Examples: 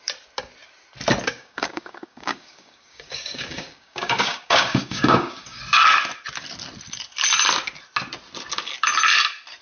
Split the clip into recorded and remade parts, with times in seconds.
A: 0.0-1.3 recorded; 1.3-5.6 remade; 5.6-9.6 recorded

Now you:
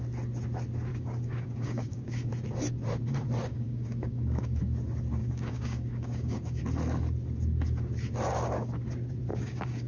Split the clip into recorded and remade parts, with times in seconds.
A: 0.0-0.9 recorded; 0.9-2.3 remade; 2.3-3.5 recorded; 3.5-4.6 remade; 4.6-5.2 recorded; 5.2-6.6 remade; 6.6-9.3 recorded; 9.3-9.9 remade

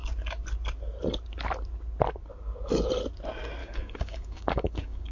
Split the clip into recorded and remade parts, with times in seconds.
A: 0.0-3.6 recorded; 3.6-5.1 remade

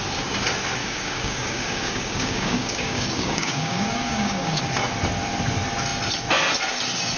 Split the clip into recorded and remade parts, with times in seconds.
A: 0.0-0.8 recorded; 0.8-4.6 remade; 4.6-7.2 recorded

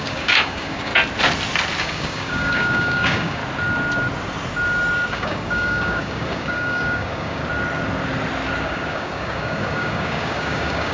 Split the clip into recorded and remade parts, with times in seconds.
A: 0.0-0.9 remade; 0.9-1.8 recorded; 1.8-3.4 remade; 3.4-5.1 recorded; 5.1-7.4 remade; 7.4-8.6 recorded; 8.6-10.9 remade

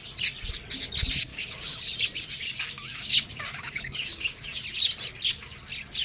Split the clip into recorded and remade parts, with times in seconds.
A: 0.0-1.3 recorded; 1.3-1.8 remade; 1.8-2.5 recorded; 2.5-4.6 remade; 4.6-6.0 recorded

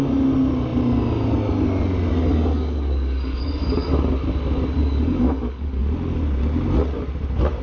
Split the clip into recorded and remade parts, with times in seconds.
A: 0.0-2.2 recorded; 2.2-4.1 remade; 4.1-4.8 recorded; 4.8-5.8 remade; 5.8-7.6 recorded

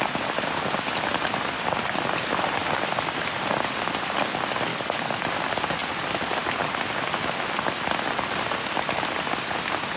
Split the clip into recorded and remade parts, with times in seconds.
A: 0.0-4.7 recorded; 4.7-5.2 remade; 5.2-10.0 recorded